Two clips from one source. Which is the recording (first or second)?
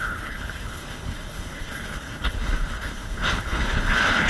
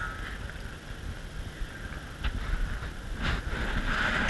second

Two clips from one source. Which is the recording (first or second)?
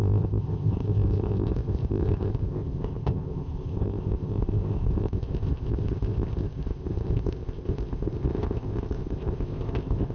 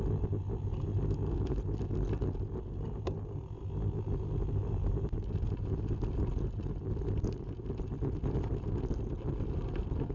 second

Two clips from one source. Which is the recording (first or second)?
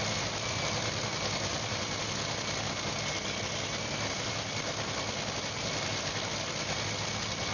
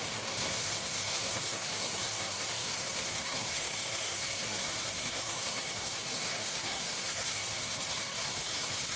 first